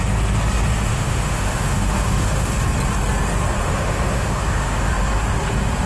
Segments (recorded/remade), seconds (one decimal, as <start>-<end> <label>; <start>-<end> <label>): 0.0-0.9 recorded; 0.9-2.5 remade; 2.5-3.6 recorded; 3.6-4.9 remade; 4.9-5.9 recorded